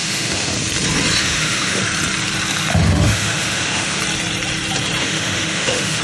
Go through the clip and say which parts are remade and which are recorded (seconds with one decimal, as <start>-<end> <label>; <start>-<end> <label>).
0.0-0.5 remade; 0.5-1.2 recorded; 1.2-1.8 remade; 1.8-2.7 recorded; 2.7-4.0 remade; 4.0-5.0 recorded; 5.0-6.0 remade